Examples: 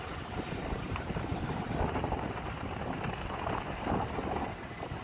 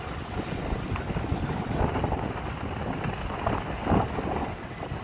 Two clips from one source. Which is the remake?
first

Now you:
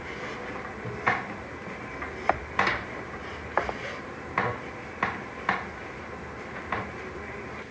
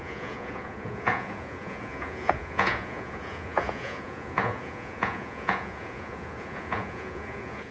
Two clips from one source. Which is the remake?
second